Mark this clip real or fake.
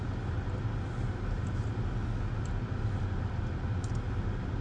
real